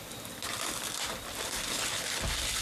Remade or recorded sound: recorded